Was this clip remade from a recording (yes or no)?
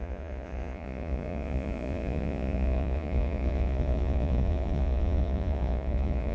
yes